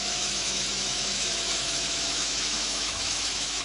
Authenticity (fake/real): fake